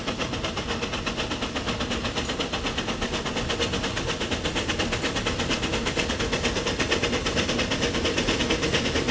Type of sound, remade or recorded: recorded